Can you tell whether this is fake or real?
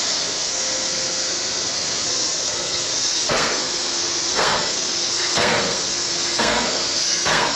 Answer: fake